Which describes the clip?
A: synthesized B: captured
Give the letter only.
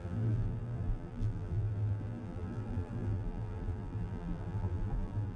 A